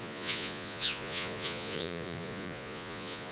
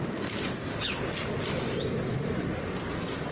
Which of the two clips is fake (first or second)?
first